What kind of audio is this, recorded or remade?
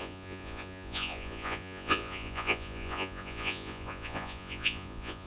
remade